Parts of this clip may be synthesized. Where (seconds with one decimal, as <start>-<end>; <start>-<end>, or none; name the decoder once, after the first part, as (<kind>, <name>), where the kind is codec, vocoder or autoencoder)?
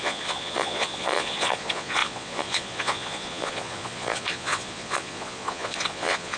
0.0-6.4 (vocoder, Vocos)